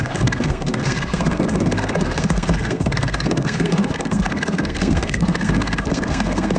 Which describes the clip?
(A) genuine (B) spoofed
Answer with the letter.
B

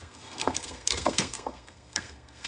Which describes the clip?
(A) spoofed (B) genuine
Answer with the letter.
A